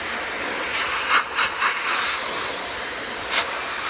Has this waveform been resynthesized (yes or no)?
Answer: no